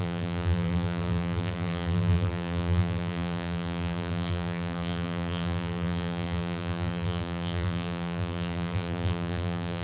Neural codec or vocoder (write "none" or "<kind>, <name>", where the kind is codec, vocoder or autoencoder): vocoder, BigVGAN v2